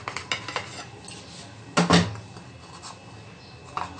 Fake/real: real